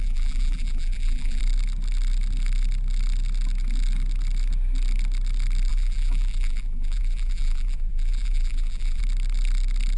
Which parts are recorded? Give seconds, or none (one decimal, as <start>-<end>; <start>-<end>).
1.4-5.7; 9.0-10.0